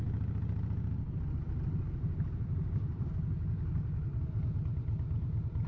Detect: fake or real real